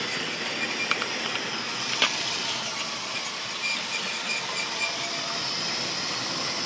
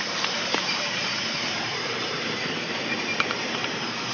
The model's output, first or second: second